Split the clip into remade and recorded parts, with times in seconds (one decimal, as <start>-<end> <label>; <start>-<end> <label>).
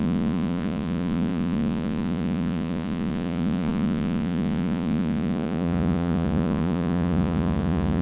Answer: 0.0-8.0 remade